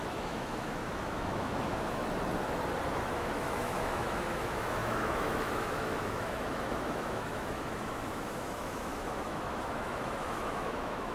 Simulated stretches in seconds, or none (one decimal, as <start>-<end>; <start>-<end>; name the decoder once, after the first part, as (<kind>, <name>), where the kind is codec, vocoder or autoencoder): 0.0-2.0 (autoencoder, DAC-VAE); 2.9-11.1